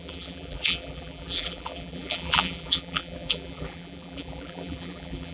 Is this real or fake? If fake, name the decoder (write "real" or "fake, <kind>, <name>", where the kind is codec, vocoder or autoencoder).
fake, vocoder, BigVGAN v2